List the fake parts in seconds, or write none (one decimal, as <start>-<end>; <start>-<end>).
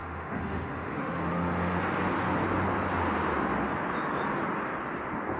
0.0-1.8